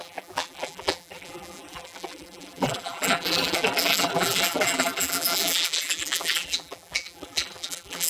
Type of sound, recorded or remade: remade